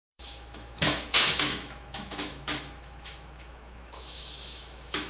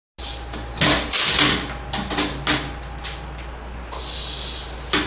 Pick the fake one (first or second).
first